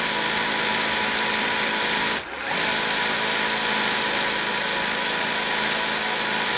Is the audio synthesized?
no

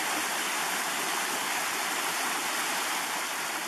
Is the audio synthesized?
no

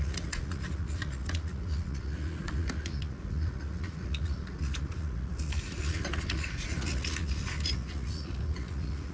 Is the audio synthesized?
yes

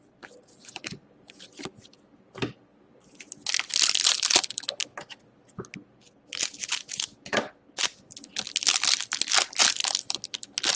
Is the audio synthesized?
no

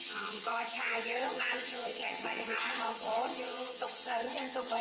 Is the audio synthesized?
yes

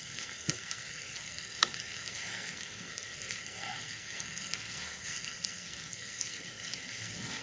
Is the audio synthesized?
yes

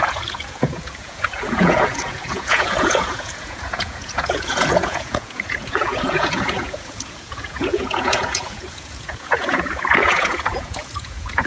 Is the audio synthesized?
yes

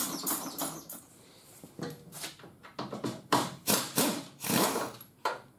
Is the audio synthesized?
yes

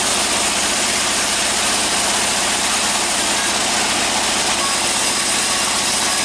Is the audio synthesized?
no